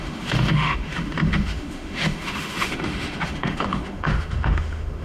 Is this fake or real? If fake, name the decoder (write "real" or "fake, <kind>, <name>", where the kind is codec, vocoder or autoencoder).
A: fake, autoencoder, DAC-VAE